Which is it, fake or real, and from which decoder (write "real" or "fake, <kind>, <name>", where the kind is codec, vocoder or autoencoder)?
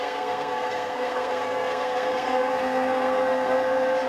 fake, codec, SNAC